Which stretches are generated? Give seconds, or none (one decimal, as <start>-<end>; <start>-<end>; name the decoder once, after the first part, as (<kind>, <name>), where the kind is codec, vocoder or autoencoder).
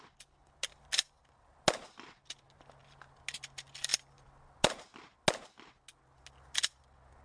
none